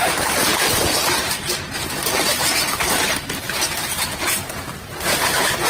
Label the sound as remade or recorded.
remade